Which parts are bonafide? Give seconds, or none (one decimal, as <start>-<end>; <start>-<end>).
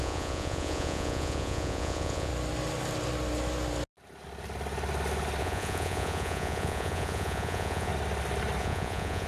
2.3-5.4; 7.9-8.6